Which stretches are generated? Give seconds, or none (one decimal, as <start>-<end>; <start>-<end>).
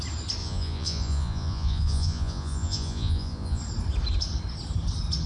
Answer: 0.4-3.6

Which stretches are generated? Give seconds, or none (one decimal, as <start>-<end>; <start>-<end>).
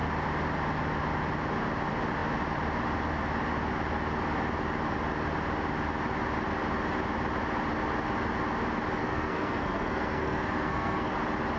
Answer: 9.0-11.1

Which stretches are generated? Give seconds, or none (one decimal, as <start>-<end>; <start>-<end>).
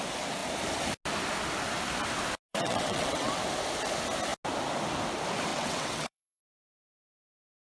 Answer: 2.5-3.4; 5.5-6.4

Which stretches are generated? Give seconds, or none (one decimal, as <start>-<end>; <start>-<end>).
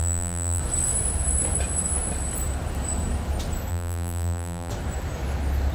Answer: 0.0-0.6; 3.7-4.7